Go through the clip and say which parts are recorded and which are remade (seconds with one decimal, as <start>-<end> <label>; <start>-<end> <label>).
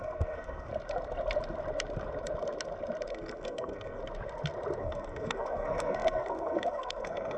0.0-0.7 remade; 0.7-3.1 recorded; 3.1-4.0 remade; 4.0-4.8 recorded; 4.8-7.4 remade